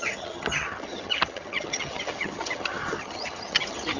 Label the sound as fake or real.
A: fake